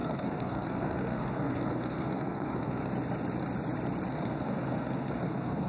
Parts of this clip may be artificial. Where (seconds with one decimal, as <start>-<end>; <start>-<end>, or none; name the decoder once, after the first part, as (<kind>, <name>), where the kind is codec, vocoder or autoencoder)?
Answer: 0.0-2.9 (codec, SNAC); 4.1-5.7

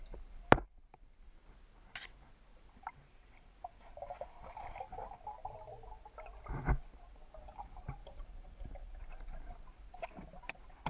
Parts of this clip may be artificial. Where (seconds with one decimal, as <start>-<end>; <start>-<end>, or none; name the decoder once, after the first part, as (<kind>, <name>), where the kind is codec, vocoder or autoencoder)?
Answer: 8.0-9.2 (vocoder, BigVGAN v2)

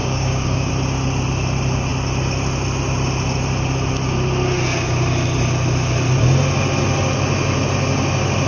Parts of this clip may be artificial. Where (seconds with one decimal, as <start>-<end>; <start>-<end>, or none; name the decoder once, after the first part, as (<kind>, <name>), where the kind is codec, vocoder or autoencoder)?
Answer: 0.0-0.7 (codec, DAC)

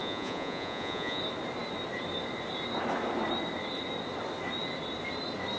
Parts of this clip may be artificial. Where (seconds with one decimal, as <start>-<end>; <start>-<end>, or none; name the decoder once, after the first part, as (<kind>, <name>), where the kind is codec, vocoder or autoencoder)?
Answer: 0.0-1.2 (vocoder, Vocos)

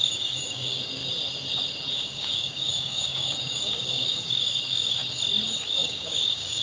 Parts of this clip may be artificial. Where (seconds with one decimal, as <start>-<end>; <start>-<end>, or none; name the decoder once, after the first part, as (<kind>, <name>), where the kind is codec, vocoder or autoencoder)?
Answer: 0.0-1.0 (codec, DAC); 1.9-5.0; 5.7-6.6